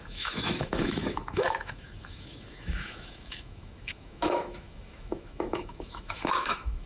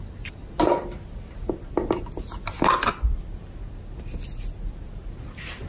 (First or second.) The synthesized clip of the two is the first